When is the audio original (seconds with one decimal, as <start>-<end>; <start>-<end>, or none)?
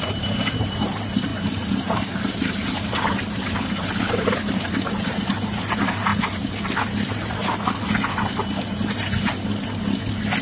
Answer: 6.1-10.4